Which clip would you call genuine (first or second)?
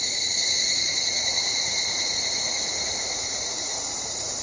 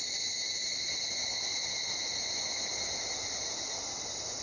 second